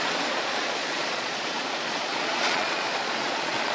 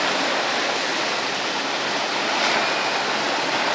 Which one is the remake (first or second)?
first